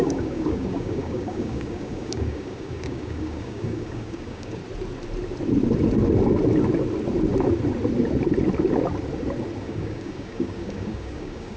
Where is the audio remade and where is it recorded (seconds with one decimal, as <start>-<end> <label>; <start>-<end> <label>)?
0.0-4.6 remade; 4.6-9.6 recorded; 9.6-11.6 remade